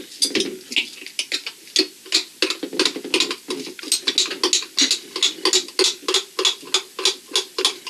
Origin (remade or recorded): recorded